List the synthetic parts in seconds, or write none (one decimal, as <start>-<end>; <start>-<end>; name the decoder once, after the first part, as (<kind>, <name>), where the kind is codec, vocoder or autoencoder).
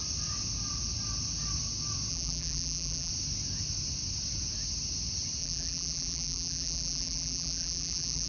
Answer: 2.1-3.1 (vocoder, BigVGAN v2); 5.4-8.3